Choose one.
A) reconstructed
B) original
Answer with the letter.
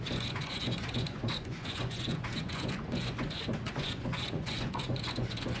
A